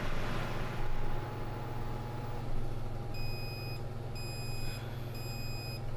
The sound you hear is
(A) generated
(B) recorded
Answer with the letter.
B